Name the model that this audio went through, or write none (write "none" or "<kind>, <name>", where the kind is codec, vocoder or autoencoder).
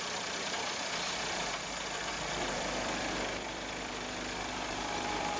vocoder, BigVGAN v2